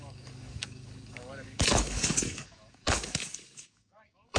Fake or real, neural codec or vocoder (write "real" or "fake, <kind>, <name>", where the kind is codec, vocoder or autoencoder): fake, codec, DAC